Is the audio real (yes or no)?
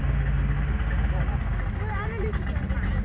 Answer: yes